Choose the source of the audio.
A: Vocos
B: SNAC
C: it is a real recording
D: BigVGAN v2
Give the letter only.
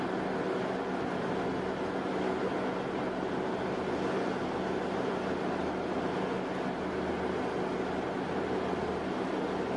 C